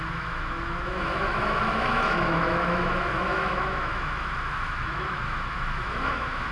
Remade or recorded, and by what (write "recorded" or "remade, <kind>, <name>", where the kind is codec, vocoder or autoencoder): remade, autoencoder, DAC-VAE